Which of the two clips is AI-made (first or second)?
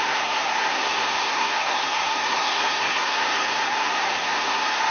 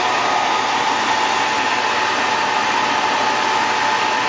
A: first